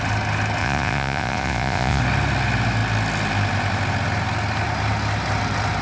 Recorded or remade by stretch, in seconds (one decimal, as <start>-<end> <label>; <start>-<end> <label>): 0.0-0.6 recorded; 0.6-2.0 remade; 2.0-5.8 recorded